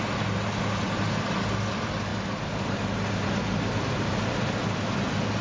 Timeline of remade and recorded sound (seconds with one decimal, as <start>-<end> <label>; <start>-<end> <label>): 0.0-2.1 recorded; 2.1-5.4 remade